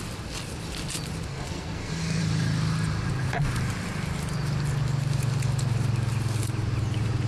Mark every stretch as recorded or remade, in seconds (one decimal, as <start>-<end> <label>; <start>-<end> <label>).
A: 0.0-1.3 recorded; 1.3-2.2 remade; 2.2-7.3 recorded